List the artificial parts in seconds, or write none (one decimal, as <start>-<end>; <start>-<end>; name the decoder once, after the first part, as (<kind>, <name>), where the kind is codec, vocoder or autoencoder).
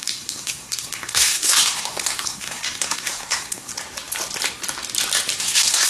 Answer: 0.0-3.7 (codec, SNAC); 5.4-5.9